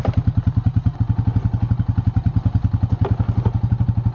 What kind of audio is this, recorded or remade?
recorded